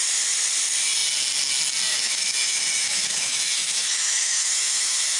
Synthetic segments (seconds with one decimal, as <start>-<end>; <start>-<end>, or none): 1.9-5.2